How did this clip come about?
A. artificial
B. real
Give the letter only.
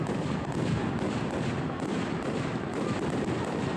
B